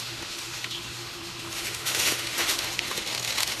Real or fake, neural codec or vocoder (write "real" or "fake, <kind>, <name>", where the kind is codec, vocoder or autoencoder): fake, autoencoder, DAC-VAE